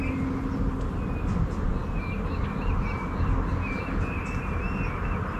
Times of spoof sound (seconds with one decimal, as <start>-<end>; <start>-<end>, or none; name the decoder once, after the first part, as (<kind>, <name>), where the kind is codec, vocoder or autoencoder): none